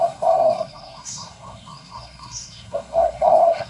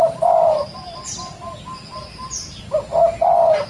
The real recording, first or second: second